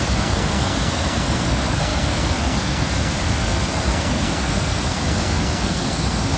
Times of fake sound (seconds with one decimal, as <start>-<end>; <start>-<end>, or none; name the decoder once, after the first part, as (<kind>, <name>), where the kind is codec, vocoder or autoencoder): 0.0-6.4 (codec, SNAC)